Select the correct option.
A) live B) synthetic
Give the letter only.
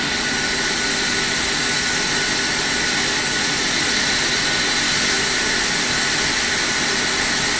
A